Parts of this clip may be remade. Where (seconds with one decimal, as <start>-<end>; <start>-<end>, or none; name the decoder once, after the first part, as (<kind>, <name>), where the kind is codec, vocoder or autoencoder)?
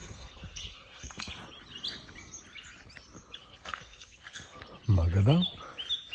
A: 0.0-1.3 (codec, SNAC); 3.4-4.6